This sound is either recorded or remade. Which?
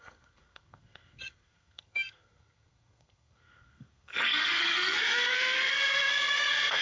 remade